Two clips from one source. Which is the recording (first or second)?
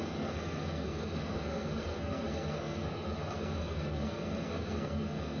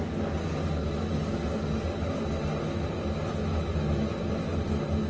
second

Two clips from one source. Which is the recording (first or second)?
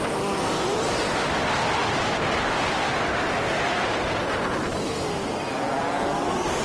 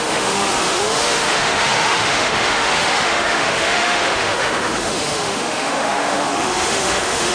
first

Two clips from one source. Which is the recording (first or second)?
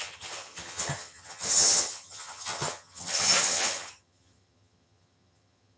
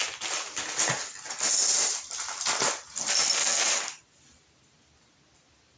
second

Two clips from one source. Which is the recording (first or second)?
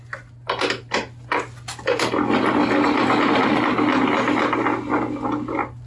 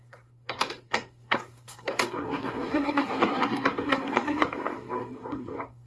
first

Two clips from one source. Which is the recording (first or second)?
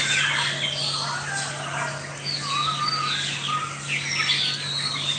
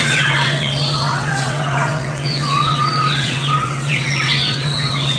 first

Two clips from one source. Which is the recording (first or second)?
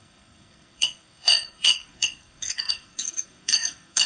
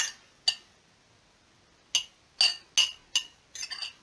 second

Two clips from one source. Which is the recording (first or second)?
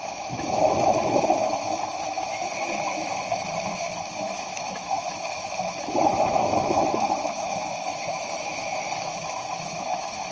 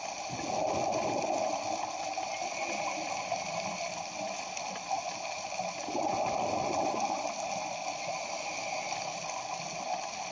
second